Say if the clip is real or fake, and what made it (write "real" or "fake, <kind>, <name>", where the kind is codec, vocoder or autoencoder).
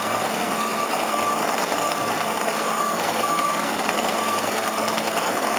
fake, codec, SNAC